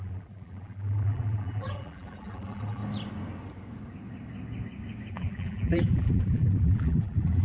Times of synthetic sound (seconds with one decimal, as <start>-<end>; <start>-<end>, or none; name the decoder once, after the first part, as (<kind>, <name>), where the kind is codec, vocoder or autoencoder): 0.0-2.8 (vocoder, BigVGAN v2); 5.1-7.4